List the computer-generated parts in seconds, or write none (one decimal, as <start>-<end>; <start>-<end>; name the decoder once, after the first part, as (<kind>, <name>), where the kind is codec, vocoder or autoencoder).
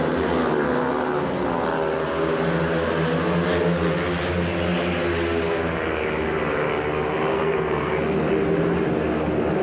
7.3-8.0 (codec, SNAC)